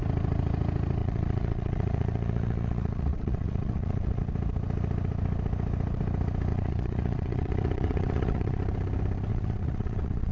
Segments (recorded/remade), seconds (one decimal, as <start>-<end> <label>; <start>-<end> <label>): 0.0-1.0 recorded; 1.0-4.2 remade; 4.2-6.5 recorded; 6.5-8.6 remade; 8.6-9.3 recorded; 9.3-10.3 remade